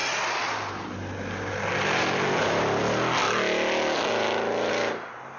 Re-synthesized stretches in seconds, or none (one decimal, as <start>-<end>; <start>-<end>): none